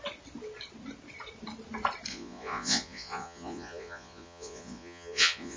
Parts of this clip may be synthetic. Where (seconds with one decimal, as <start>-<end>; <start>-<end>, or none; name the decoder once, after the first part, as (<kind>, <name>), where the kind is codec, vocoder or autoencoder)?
2.1-5.6 (vocoder, Vocos)